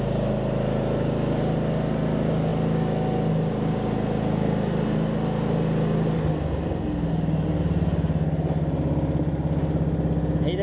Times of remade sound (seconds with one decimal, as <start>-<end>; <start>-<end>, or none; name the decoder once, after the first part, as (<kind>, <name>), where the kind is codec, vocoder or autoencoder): none